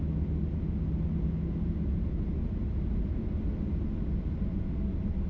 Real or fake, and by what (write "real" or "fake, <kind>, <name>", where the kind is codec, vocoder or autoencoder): real